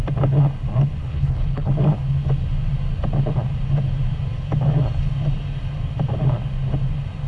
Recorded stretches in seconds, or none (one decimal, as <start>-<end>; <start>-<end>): 0.0-1.0; 1.7-7.3